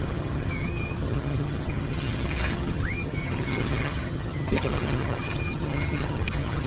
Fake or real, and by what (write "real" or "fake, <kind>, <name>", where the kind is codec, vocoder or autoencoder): fake, vocoder, HiFi-GAN